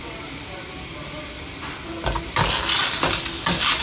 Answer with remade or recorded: recorded